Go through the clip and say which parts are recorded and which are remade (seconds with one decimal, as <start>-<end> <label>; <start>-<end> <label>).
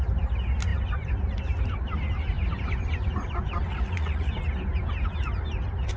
0.0-3.7 recorded; 3.7-4.3 remade; 4.3-6.0 recorded